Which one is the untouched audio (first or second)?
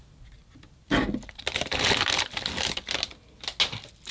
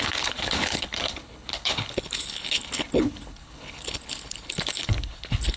first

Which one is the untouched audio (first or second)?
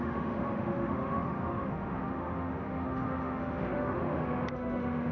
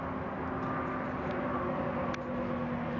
second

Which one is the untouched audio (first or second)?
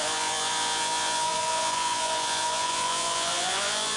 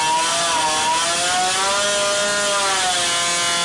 second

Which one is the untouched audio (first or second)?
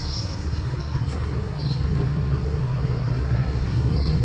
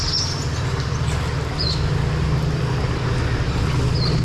second